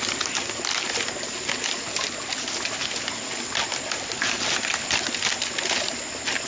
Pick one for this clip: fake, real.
real